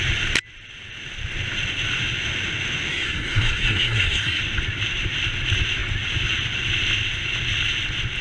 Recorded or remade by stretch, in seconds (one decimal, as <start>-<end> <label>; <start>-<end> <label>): 0.0-2.9 recorded; 2.9-4.4 remade; 4.4-8.2 recorded

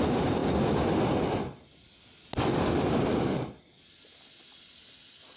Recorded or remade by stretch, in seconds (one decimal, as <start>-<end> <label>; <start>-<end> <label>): 0.0-5.4 recorded

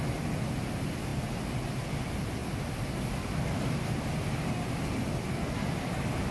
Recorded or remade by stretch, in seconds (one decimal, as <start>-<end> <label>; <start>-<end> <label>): 0.0-6.3 recorded

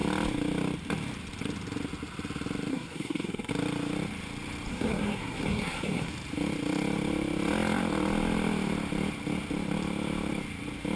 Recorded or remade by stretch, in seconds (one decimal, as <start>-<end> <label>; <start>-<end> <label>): 0.0-2.7 recorded; 2.7-3.5 remade; 3.5-4.7 recorded; 4.7-6.1 remade; 6.1-11.0 recorded

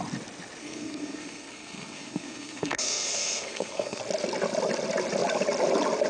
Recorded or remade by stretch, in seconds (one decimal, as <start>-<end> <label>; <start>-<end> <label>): 0.0-0.6 recorded; 0.6-4.0 remade; 4.0-6.1 recorded

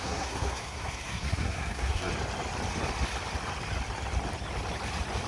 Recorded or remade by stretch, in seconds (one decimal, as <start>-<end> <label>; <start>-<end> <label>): 0.0-2.1 remade; 2.1-5.3 recorded